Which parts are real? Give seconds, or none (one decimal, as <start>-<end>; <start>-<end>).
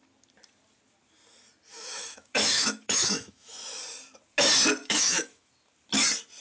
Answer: 0.0-1.7; 3.8-4.8; 5.5-6.4